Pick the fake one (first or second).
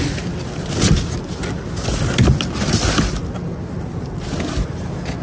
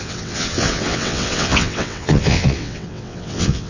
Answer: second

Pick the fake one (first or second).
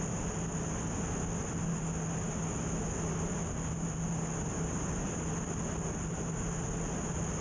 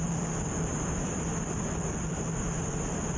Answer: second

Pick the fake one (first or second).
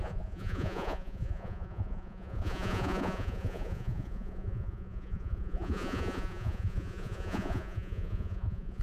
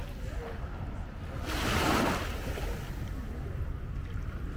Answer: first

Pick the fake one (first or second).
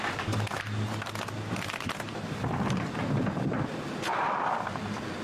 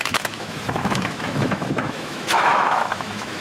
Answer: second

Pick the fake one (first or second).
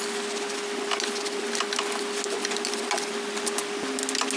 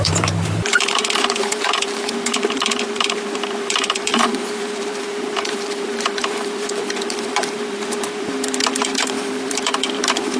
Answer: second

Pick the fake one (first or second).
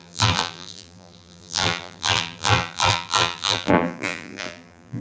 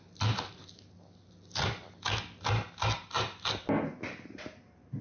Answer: first